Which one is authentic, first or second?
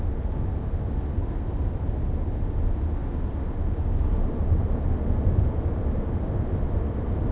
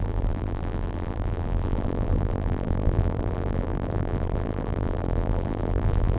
first